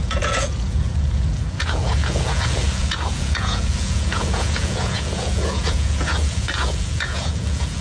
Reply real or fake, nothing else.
fake